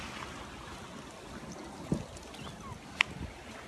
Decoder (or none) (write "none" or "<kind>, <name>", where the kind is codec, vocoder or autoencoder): none